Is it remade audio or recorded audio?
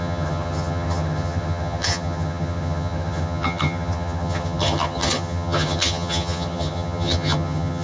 remade